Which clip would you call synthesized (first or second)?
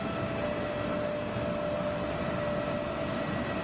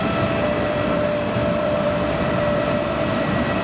second